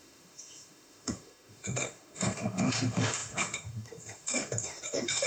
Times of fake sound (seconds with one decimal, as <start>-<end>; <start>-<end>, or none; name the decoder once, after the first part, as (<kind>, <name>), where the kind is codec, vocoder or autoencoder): 0.0-5.3 (autoencoder, DAC-VAE)